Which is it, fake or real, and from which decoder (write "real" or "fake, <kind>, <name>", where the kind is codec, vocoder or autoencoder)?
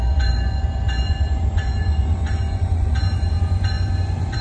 fake, vocoder, Vocos